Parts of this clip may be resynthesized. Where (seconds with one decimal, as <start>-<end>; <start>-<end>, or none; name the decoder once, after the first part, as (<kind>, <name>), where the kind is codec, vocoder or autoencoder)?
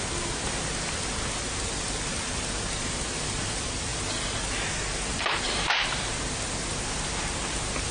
none